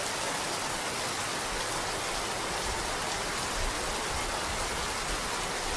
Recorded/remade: recorded